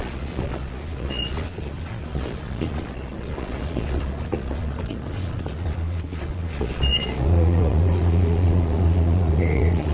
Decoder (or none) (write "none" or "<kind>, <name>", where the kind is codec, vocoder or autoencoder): vocoder, Vocos